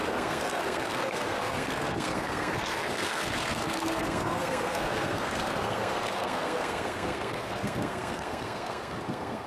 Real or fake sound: fake